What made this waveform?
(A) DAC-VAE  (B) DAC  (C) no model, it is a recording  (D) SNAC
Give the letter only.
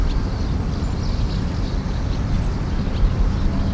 C